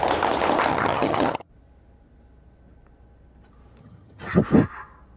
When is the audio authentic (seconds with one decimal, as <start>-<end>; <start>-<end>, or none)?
0.0-0.7; 1.5-3.8; 4.4-5.2